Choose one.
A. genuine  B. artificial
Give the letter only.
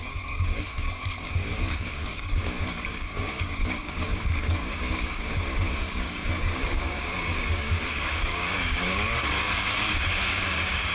B